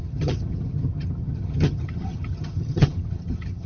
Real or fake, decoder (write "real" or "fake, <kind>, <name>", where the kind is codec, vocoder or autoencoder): fake, vocoder, HiFi-GAN